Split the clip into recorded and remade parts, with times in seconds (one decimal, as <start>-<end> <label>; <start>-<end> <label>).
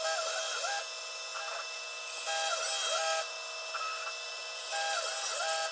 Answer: 0.0-5.7 recorded